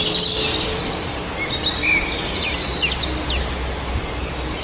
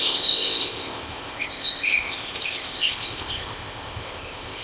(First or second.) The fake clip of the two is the second